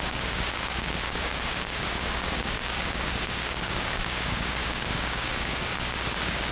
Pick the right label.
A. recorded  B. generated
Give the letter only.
B